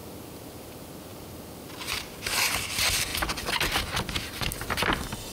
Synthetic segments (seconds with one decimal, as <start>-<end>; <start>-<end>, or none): none